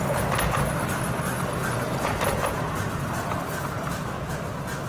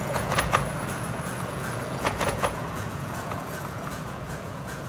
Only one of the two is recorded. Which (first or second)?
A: first